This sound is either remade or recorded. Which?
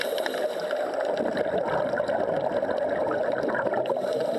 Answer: recorded